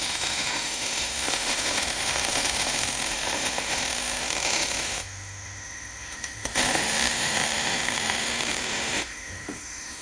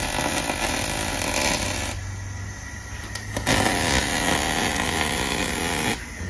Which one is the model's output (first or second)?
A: first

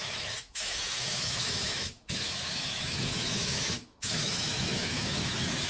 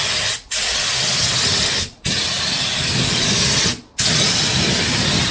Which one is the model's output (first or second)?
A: first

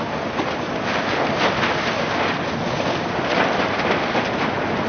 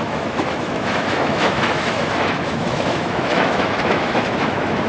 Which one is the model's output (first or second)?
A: second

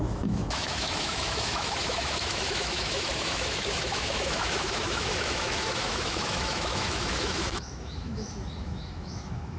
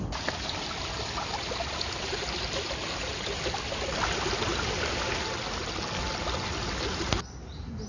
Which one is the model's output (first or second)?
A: first